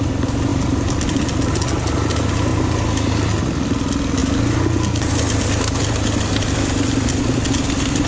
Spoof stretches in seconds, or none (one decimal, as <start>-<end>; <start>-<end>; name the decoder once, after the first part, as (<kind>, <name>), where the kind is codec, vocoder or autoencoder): none